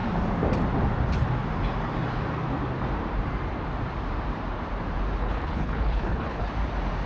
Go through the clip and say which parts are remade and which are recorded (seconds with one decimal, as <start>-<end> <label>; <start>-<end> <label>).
0.0-5.2 recorded; 5.2-6.5 remade; 6.5-7.1 recorded